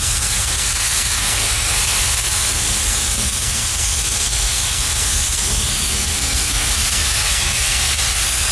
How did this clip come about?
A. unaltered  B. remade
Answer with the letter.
B